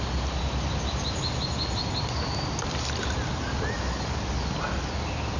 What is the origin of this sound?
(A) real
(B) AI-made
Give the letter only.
A